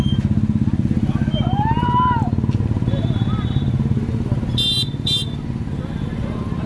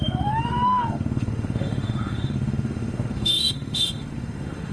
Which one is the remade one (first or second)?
second